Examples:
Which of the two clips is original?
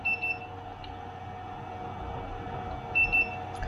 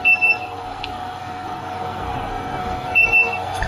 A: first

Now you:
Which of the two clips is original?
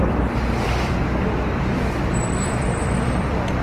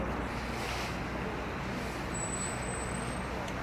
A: second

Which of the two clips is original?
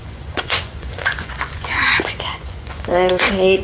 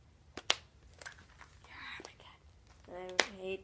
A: second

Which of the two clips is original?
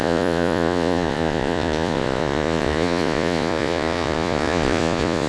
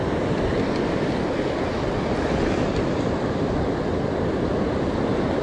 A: second